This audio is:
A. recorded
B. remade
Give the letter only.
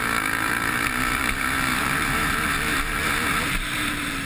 B